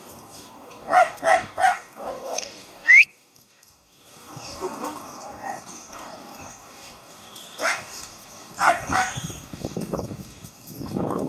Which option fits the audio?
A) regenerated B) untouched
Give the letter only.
A